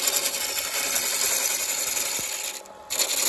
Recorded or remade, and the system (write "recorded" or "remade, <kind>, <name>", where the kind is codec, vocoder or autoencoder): recorded